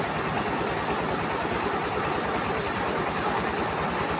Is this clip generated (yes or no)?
no